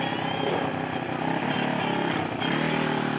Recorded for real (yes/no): yes